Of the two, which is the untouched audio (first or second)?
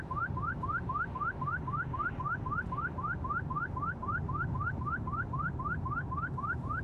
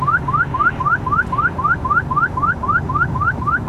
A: second